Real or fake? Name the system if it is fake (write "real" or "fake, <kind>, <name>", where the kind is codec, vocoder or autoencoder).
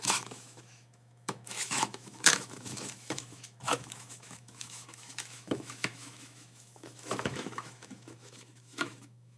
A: fake, autoencoder, DAC-VAE